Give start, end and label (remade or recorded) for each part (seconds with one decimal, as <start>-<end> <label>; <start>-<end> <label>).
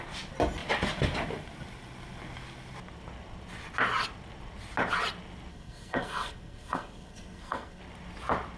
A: 0.0-5.5 recorded; 5.5-7.8 remade; 7.8-8.6 recorded